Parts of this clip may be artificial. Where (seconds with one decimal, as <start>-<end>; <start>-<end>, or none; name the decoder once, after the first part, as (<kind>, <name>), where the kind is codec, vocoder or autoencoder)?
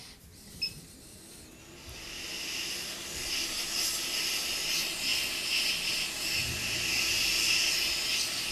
none